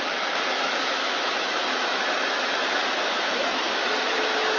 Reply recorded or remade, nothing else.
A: remade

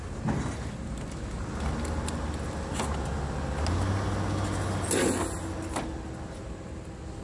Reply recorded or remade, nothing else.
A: recorded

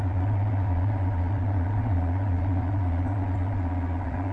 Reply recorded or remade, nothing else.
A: remade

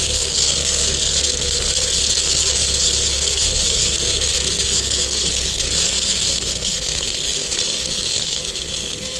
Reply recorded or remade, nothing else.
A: remade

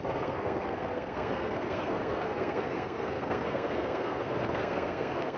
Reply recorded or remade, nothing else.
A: remade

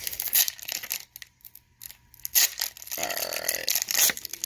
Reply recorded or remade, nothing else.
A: recorded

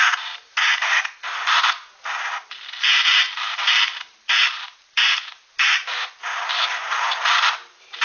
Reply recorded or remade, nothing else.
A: remade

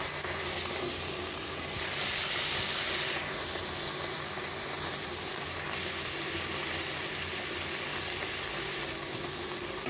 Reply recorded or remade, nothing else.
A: recorded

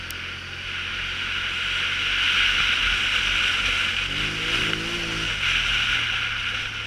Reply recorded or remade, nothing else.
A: recorded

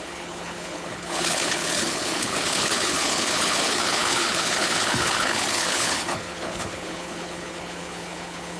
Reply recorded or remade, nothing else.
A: remade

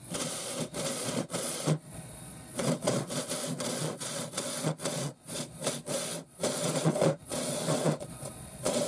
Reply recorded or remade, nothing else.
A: remade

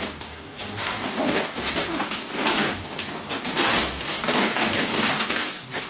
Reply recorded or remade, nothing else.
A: remade